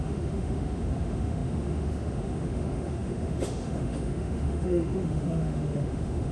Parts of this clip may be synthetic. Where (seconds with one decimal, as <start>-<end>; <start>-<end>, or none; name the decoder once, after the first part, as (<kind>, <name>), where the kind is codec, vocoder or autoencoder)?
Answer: 0.0-6.3 (autoencoder, DAC-VAE)